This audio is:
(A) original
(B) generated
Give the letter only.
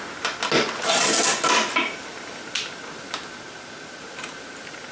A